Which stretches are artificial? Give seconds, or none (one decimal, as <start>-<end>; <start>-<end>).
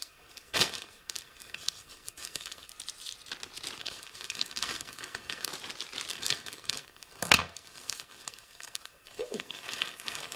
0.0-2.7; 3.8-5.5; 6.1-10.4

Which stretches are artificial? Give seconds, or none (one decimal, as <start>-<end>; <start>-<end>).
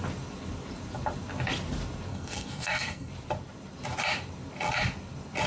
2.1-3.1